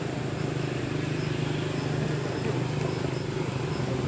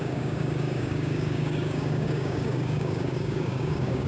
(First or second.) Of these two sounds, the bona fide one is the first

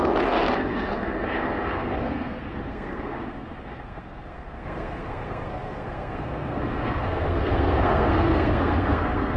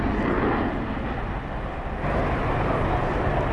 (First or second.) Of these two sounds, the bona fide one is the second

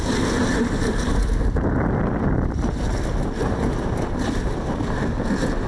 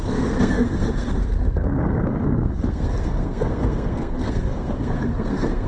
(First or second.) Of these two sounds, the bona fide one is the first